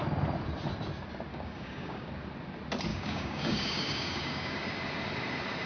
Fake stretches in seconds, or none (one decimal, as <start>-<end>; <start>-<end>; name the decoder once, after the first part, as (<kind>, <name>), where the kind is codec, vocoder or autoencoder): 1.3-2.1 (codec, DAC); 2.9-4.6